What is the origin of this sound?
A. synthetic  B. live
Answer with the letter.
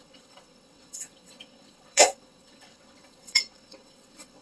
A